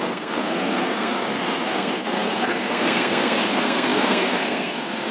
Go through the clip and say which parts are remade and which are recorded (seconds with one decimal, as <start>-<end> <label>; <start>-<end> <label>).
0.0-5.1 remade